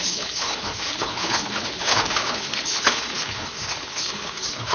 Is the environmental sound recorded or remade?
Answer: remade